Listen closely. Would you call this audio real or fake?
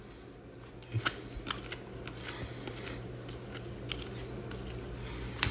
real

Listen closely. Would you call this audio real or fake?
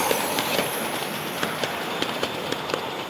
fake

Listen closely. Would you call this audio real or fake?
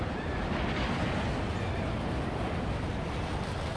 real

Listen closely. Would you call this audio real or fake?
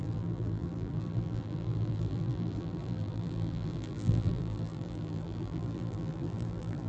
fake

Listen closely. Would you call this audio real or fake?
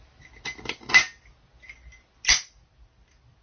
real